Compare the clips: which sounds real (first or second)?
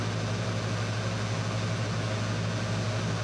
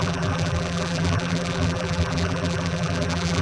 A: first